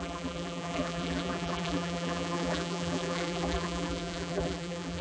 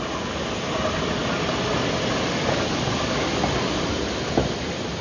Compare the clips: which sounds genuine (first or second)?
second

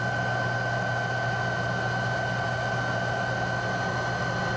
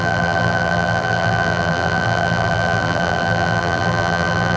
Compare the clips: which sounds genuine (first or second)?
first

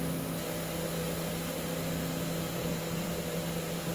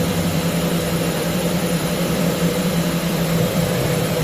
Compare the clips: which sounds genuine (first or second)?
first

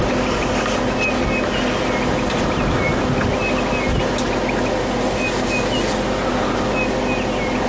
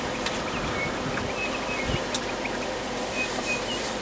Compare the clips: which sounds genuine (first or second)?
first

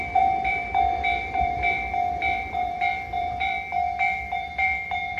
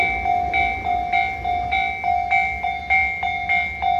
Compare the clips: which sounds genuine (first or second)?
second